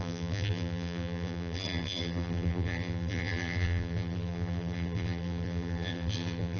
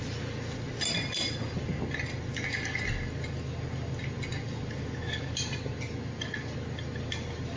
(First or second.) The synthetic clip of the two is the first